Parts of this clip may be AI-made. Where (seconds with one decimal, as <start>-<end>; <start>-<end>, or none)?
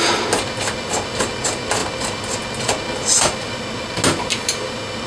none